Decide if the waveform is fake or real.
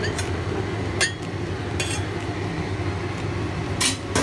real